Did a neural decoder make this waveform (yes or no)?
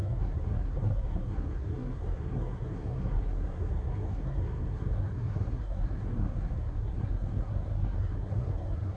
yes